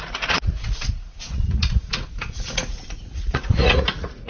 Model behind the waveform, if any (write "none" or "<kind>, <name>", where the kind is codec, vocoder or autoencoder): vocoder, Vocos